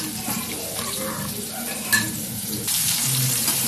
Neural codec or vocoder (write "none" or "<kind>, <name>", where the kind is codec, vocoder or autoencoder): vocoder, BigVGAN v2